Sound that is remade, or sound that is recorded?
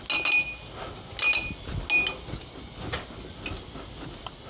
recorded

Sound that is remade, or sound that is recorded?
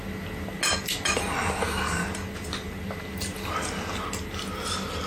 recorded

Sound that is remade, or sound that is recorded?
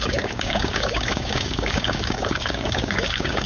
remade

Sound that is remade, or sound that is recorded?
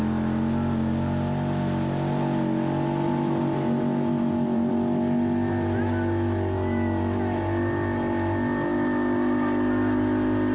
recorded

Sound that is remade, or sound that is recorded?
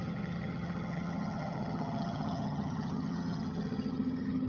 remade